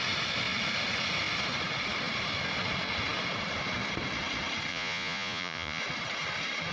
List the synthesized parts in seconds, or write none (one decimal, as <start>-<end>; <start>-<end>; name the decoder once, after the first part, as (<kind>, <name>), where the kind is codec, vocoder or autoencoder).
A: 4.7-5.8 (vocoder, Vocos)